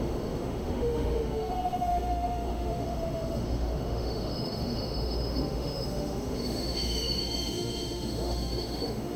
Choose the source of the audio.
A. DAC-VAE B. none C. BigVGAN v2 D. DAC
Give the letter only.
A